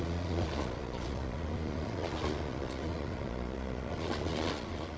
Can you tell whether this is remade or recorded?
remade